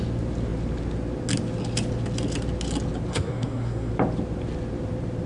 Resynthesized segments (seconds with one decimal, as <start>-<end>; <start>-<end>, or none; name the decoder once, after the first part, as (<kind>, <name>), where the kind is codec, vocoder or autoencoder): 3.1-3.9 (codec, SNAC)